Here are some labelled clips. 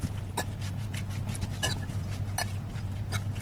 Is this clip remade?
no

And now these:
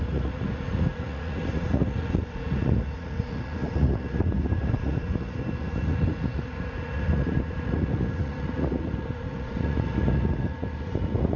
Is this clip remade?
yes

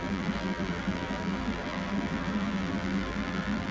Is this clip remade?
yes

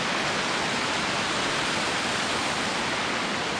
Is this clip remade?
no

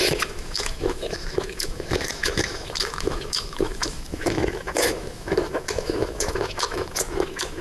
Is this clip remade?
yes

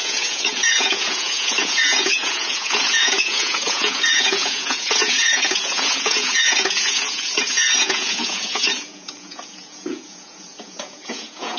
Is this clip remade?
yes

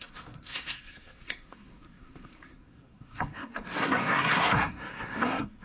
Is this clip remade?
yes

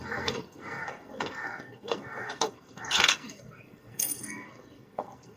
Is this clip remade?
yes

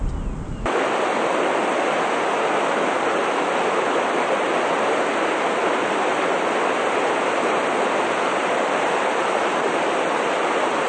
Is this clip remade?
no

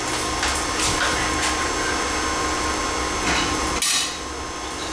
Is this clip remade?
no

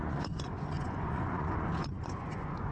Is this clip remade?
yes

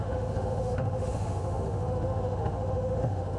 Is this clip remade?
yes